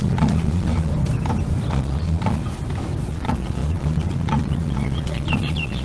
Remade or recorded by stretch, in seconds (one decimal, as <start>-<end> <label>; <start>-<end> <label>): 0.0-0.9 remade; 0.9-1.7 recorded; 1.7-2.4 remade; 2.4-3.1 recorded; 3.1-5.8 remade